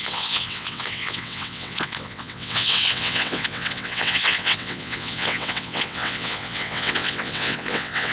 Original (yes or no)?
no